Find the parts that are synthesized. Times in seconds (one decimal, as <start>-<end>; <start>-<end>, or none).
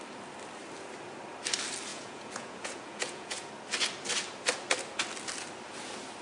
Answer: 1.9-3.5